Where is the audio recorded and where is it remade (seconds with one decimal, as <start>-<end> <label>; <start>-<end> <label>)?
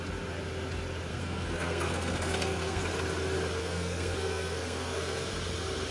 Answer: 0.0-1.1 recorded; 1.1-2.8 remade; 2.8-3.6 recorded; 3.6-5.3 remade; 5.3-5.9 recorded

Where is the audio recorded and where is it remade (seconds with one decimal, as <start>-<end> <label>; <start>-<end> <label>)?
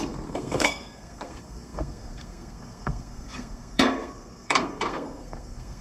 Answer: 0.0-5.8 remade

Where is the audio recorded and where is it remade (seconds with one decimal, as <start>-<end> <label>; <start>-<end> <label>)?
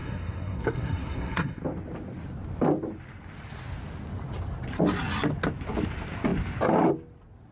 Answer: 0.0-1.6 remade; 1.6-7.5 recorded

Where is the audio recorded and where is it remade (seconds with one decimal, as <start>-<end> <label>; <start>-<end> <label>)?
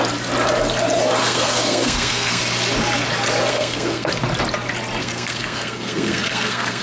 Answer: 0.0-1.2 recorded; 1.2-2.4 remade; 2.4-3.5 recorded; 3.5-4.1 remade; 4.1-5.0 recorded; 5.0-6.8 remade